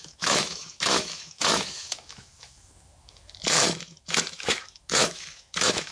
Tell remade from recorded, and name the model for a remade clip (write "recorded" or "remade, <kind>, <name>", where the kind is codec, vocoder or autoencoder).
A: remade, autoencoder, DAC-VAE